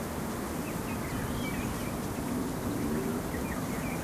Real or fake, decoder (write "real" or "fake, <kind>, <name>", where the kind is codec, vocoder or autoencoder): real